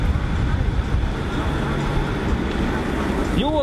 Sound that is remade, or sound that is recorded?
recorded